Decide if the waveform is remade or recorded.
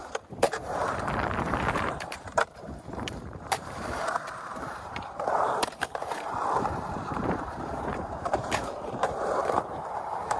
remade